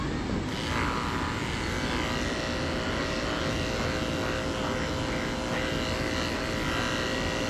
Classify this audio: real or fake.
real